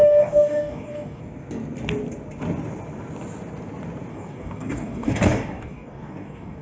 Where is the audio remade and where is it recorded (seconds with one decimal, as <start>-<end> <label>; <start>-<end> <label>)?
0.0-1.2 remade; 1.2-4.1 recorded; 4.1-6.6 remade